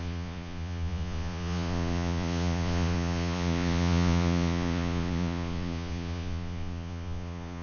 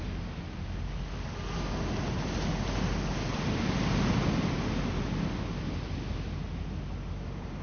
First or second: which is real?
second